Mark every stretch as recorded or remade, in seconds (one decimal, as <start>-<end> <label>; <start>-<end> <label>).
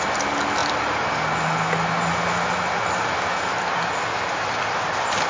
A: 0.0-5.3 recorded